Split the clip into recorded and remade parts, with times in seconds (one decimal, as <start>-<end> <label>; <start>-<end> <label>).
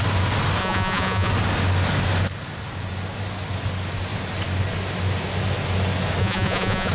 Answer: 0.0-0.6 recorded; 0.6-1.3 remade; 1.3-6.2 recorded; 6.2-6.9 remade